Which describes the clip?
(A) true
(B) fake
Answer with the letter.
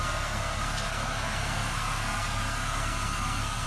B